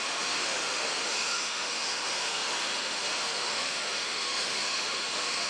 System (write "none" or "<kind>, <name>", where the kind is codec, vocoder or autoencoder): autoencoder, DAC-VAE